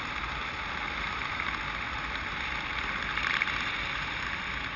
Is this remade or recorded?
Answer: recorded